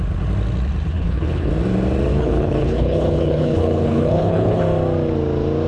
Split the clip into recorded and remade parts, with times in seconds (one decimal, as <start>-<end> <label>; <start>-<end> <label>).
0.0-0.9 recorded; 0.9-1.5 remade; 1.5-2.1 recorded; 2.1-4.6 remade; 4.6-5.7 recorded